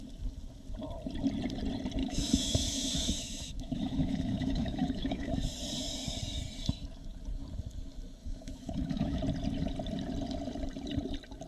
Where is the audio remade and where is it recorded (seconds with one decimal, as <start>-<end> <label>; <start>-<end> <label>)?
0.0-2.0 recorded; 2.0-5.3 remade; 5.3-8.2 recorded; 8.2-9.2 remade; 9.2-11.5 recorded